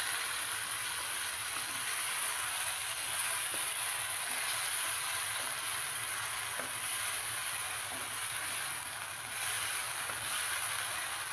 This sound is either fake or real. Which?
real